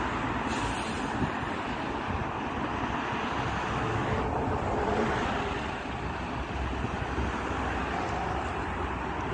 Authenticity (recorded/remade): recorded